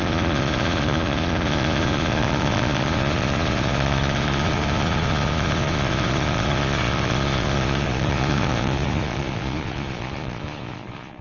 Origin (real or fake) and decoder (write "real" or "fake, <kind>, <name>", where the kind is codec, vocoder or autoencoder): fake, vocoder, Vocos